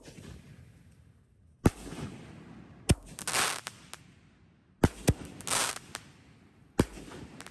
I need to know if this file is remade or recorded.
recorded